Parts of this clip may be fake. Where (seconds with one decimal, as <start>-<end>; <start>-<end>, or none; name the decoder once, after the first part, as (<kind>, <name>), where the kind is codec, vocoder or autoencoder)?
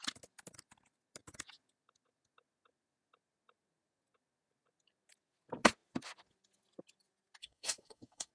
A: 7.4-8.3 (codec, DAC)